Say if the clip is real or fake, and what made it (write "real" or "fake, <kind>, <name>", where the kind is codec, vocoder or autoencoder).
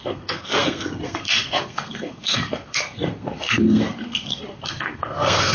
fake, codec, SNAC